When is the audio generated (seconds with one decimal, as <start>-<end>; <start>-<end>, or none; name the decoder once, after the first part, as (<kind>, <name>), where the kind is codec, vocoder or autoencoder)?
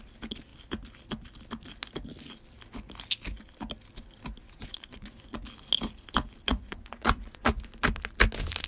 4.4-5.4 (vocoder, Vocos); 6.5-7.6